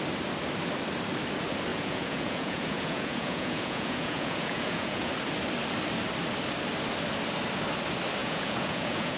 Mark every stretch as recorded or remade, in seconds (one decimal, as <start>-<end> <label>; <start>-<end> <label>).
0.0-1.7 recorded; 1.7-5.1 remade; 5.1-8.2 recorded; 8.2-9.2 remade